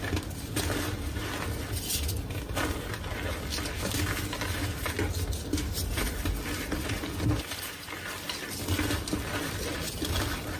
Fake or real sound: real